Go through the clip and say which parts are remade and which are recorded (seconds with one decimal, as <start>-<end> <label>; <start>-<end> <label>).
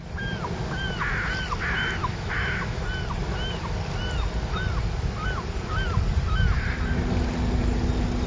0.0-2.0 recorded; 2.0-2.8 remade; 2.8-8.3 recorded